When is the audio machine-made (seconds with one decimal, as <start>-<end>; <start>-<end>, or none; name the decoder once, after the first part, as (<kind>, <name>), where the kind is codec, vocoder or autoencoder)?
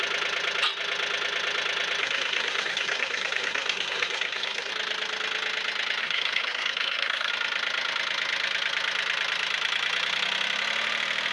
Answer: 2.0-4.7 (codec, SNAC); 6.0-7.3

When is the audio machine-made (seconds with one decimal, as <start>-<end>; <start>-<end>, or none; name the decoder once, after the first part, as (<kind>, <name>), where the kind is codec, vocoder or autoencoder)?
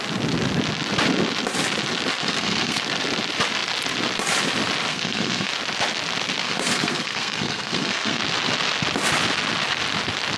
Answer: 2.2-2.8 (codec, SNAC); 4.9-5.5; 6.4-8.2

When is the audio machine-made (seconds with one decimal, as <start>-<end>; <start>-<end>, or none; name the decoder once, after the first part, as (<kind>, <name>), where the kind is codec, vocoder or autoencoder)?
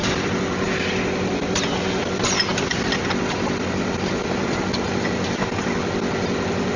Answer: none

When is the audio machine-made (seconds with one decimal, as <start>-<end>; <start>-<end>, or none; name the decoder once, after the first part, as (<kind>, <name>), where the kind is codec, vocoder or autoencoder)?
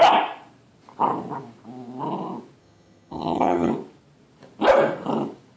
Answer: 2.6-3.7 (vocoder, HiFi-GAN)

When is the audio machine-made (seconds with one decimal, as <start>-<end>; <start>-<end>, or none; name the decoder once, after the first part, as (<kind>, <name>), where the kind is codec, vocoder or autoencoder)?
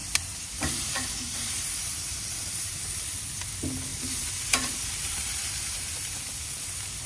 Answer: 0.0-2.7 (vocoder, BigVGAN v2); 3.9-6.2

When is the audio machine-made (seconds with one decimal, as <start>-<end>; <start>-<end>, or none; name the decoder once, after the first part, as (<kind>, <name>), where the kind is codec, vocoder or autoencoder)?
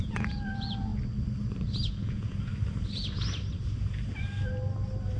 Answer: 0.0-0.9 (vocoder, Vocos); 1.9-2.5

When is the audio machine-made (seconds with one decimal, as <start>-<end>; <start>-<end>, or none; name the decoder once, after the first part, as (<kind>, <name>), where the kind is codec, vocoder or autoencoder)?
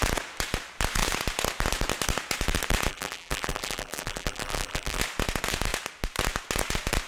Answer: 2.9-5.0 (vocoder, BigVGAN v2)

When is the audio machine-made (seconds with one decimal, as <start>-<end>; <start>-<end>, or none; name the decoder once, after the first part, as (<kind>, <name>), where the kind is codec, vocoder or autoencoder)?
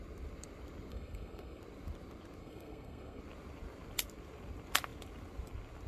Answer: 0.9-1.6 (codec, SNAC); 2.4-3.2